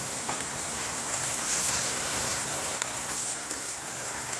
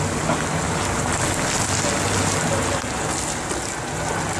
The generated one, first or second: first